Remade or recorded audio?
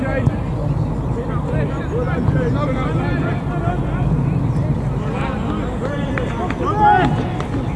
recorded